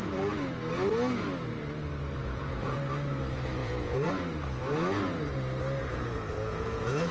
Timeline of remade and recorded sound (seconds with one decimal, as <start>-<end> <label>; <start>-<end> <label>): 0.0-2.2 recorded; 2.2-2.8 remade; 2.8-3.6 recorded; 3.6-4.1 remade; 4.1-5.8 recorded; 5.8-7.1 remade